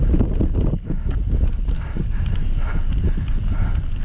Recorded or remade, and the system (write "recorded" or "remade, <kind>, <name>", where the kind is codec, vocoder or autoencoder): recorded